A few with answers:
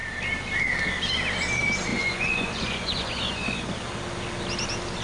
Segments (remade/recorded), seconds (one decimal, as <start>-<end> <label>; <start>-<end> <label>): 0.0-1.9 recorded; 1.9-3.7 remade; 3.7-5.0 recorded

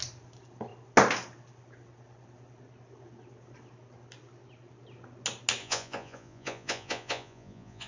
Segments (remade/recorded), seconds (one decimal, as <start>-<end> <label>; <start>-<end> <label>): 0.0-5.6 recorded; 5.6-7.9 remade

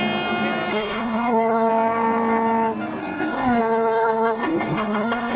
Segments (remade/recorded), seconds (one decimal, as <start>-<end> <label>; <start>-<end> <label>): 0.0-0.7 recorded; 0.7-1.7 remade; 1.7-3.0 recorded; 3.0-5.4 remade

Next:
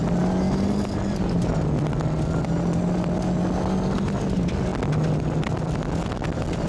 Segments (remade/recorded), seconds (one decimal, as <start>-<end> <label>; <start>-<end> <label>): 0.0-6.7 recorded

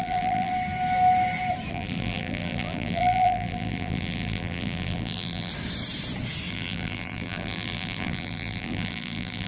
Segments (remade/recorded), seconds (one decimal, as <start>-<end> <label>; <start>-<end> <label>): 0.0-0.5 remade; 0.5-1.7 recorded; 1.7-5.5 remade; 5.5-6.5 recorded; 6.5-9.5 remade